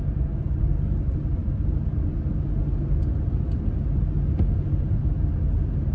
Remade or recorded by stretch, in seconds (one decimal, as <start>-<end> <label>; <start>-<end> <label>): 0.0-5.9 recorded